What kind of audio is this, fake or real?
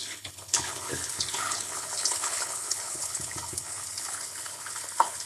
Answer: fake